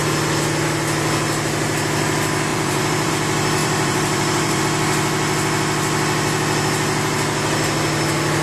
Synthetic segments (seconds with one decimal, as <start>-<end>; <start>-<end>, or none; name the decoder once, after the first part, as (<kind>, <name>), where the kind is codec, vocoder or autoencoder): 2.5-3.1 (vocoder, BigVGAN v2); 3.6-4.6